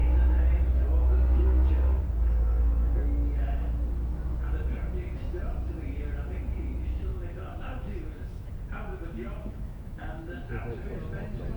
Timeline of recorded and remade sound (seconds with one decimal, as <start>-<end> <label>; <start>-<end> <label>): 0.0-7.1 recorded; 7.1-8.5 remade; 8.5-8.9 recorded; 8.9-10.2 remade; 10.2-11.6 recorded